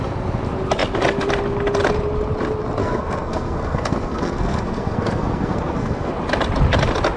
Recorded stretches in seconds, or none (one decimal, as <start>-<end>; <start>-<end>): 0.0-2.8; 6.1-7.2

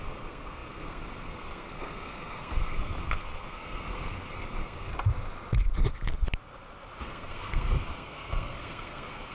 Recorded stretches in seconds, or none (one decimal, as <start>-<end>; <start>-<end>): 4.9-7.0

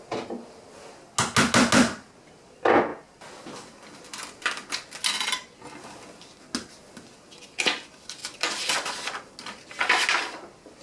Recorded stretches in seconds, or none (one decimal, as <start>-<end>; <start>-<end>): 0.0-10.8

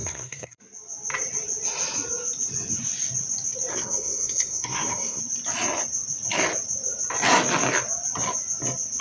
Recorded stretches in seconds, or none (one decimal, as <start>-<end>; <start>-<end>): 0.6-3.7; 5.2-9.0

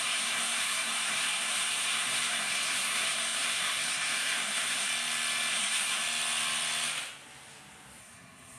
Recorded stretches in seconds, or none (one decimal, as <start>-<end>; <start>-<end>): 4.9-5.5; 6.0-8.0

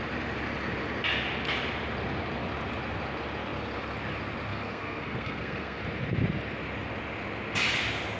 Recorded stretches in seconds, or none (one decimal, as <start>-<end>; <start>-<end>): 0.0-4.5; 5.8-8.2

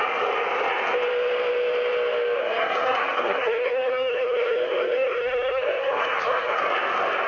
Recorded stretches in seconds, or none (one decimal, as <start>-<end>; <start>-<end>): 0.0-2.4; 6.6-7.3

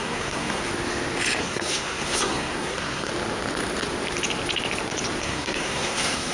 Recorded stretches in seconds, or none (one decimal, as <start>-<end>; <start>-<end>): 0.6-1.4; 3.1-5.2